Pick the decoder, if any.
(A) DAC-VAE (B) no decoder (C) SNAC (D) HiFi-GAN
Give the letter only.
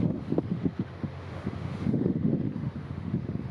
A